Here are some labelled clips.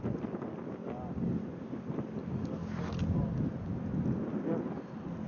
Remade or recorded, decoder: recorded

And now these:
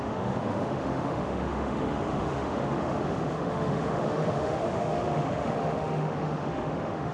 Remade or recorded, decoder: remade, autoencoder, DAC-VAE